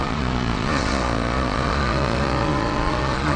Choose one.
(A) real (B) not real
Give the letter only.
B